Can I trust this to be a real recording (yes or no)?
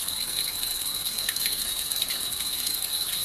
no